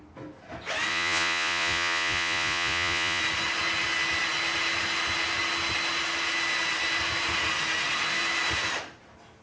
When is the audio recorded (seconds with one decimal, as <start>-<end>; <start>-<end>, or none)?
0.0-0.9; 3.2-9.4